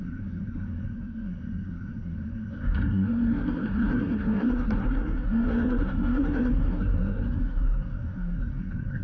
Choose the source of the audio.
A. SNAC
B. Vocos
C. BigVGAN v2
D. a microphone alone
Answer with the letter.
A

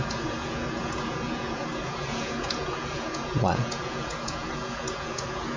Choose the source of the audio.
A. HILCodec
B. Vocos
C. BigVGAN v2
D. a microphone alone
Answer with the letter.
B